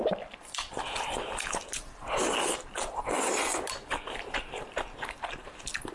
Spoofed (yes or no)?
no